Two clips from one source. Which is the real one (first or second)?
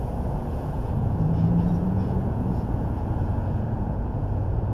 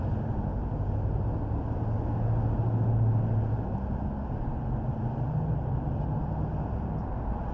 second